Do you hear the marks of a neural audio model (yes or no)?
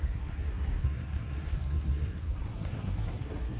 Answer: yes